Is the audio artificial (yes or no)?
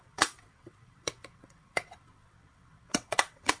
yes